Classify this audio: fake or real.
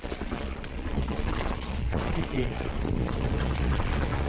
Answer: fake